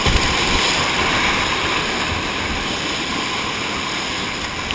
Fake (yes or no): no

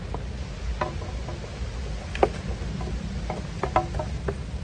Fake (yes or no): no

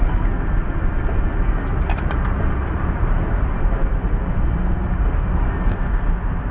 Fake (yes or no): no